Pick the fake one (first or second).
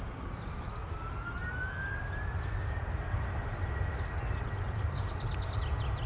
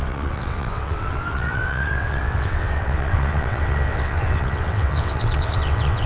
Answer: second